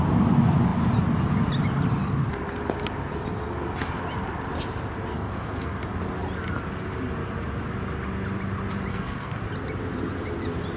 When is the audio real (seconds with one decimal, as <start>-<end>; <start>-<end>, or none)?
0.0-5.1; 5.8-8.9; 9.4-10.8